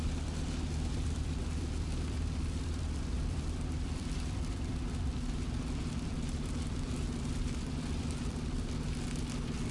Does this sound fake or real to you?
fake